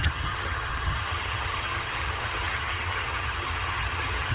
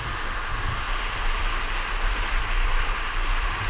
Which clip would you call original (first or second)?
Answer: second